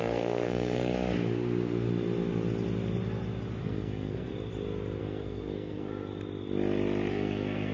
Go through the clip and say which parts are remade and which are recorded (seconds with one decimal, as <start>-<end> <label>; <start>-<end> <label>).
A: 0.0-0.9 remade; 0.9-3.6 recorded; 3.6-4.3 remade; 4.3-5.0 recorded; 5.0-5.9 remade; 5.9-7.1 recorded; 7.1-7.7 remade